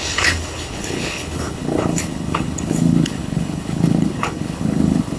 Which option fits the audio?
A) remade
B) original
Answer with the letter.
A